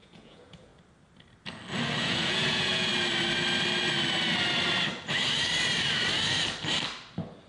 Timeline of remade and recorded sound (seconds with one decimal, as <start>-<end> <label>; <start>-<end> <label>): 0.0-0.7 remade; 0.7-2.0 recorded; 2.0-2.9 remade; 2.9-7.5 recorded